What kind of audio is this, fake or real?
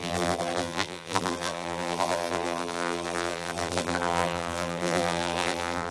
fake